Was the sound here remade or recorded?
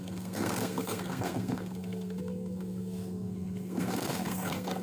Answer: remade